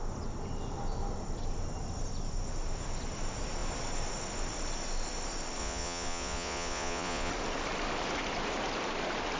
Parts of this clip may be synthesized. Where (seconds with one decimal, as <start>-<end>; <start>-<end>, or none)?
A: 5.6-7.3